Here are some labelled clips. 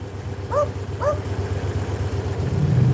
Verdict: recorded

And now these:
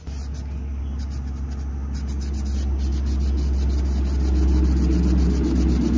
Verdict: recorded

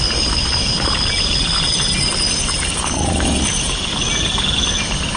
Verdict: recorded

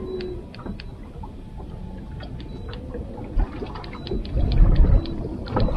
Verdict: recorded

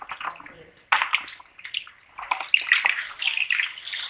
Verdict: recorded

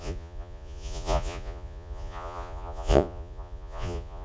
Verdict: remade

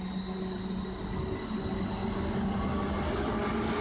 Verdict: recorded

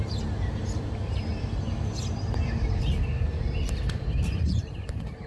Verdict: remade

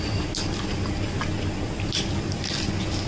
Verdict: recorded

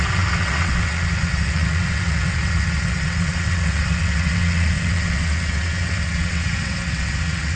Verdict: remade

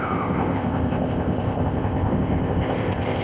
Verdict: remade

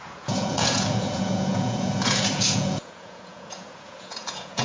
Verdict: remade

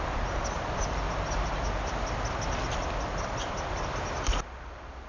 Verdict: recorded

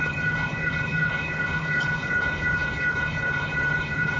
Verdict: remade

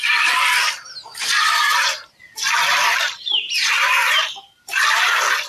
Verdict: recorded